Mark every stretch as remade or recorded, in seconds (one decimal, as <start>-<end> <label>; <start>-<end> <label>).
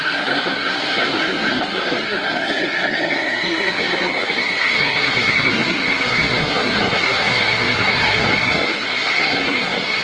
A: 0.0-10.0 remade